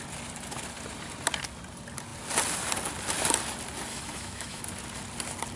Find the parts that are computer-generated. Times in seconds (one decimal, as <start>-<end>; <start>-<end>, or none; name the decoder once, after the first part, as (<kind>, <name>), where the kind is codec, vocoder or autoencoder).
3.9-4.6 (autoencoder, DAC-VAE)